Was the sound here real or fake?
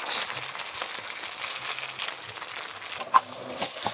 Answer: real